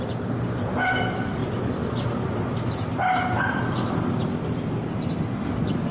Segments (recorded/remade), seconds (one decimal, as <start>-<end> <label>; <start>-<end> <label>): 0.0-5.9 recorded